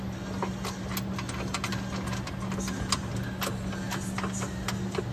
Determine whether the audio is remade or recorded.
recorded